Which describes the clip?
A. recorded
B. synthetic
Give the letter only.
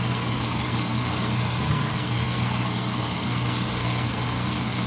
B